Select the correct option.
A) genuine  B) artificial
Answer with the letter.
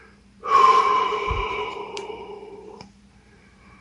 B